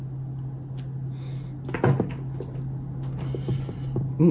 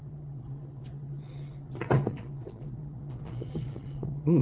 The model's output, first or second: second